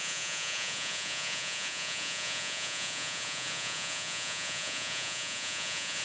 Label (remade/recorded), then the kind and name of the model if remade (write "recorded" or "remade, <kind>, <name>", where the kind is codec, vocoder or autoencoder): remade, vocoder, Vocos